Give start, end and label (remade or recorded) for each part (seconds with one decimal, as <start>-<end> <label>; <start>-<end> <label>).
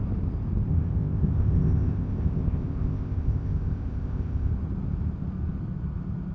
0.0-0.7 recorded; 0.7-4.5 remade; 4.5-6.3 recorded